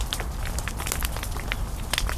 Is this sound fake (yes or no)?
no